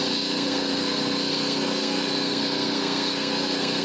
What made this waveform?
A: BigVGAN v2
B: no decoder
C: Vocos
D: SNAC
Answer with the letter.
D